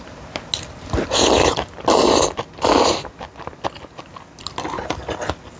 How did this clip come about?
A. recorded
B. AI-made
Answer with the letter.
A